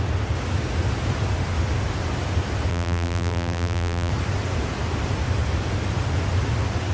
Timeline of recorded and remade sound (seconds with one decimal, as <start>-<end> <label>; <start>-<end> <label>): 0.0-2.7 recorded; 2.7-4.1 remade; 4.1-6.9 recorded